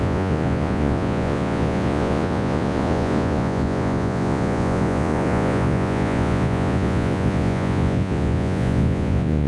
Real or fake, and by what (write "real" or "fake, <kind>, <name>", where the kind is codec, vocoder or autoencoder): fake, vocoder, Vocos